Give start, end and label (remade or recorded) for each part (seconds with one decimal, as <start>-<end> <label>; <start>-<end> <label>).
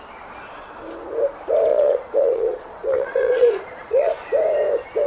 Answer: 0.0-1.7 recorded; 1.7-4.1 remade; 4.1-5.1 recorded